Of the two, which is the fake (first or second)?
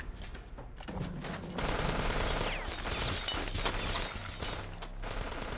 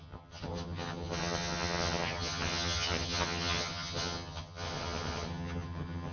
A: second